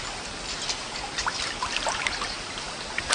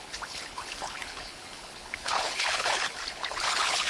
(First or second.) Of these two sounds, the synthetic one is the second